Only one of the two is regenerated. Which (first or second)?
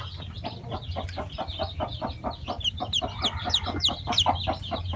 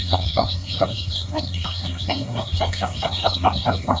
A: second